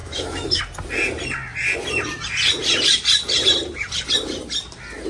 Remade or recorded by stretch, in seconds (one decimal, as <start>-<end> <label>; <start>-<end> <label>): 0.0-0.6 remade; 0.6-5.1 recorded